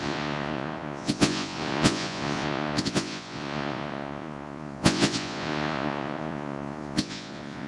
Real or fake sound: fake